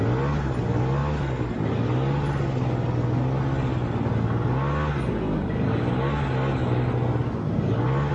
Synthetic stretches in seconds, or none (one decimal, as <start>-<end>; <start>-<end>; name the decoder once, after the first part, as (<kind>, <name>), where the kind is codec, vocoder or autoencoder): none